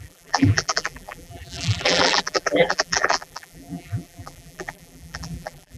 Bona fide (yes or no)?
no